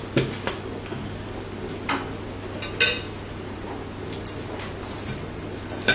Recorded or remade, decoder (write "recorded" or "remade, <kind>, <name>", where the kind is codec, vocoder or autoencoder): recorded